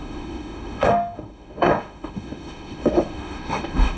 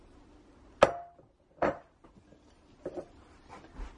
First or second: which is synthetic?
first